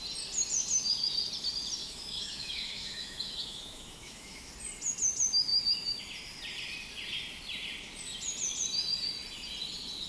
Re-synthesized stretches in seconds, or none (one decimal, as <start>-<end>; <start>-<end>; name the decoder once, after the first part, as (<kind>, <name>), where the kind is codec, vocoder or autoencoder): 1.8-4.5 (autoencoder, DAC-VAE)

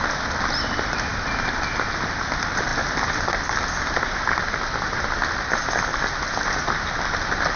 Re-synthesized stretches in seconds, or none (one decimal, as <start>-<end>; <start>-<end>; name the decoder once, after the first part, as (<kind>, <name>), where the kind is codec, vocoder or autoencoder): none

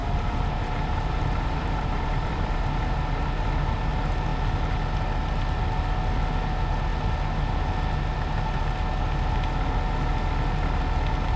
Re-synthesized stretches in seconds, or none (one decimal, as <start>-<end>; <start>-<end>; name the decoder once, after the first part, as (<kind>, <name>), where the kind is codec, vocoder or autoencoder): 0.0-2.6 (vocoder, BigVGAN v2)

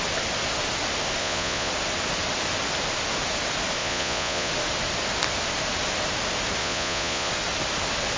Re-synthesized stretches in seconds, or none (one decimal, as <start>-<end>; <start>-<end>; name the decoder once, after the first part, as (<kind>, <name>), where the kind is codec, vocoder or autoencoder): 1.2-1.7 (vocoder, Vocos); 3.8-4.5; 6.6-7.3

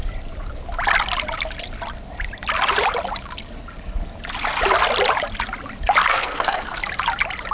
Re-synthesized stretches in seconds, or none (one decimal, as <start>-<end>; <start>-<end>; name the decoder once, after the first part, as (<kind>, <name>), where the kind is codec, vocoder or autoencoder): 6.1-6.8 (codec, SNAC)